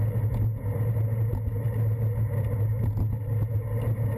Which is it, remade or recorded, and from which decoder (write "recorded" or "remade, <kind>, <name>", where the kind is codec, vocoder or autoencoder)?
recorded